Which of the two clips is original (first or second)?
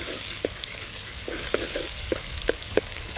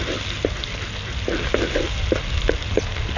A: second